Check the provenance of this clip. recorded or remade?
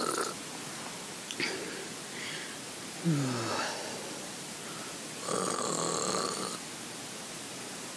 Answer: recorded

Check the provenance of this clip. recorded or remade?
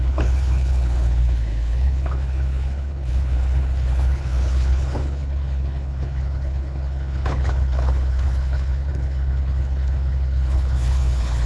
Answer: remade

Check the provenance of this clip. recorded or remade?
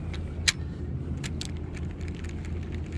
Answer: recorded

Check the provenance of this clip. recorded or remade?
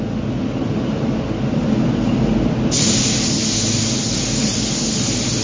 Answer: recorded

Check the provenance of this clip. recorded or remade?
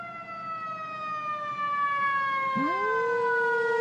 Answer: recorded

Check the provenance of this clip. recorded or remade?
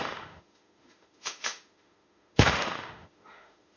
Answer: remade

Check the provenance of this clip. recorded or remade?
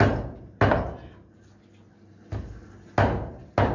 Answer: recorded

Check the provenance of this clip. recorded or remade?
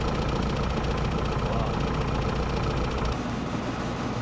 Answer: recorded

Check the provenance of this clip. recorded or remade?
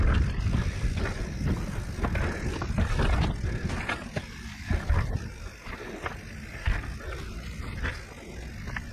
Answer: recorded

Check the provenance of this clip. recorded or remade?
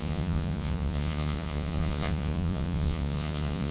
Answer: remade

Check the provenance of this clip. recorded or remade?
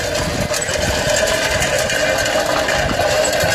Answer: recorded